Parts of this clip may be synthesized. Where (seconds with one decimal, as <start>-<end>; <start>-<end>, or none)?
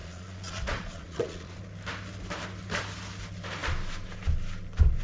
0.0-1.6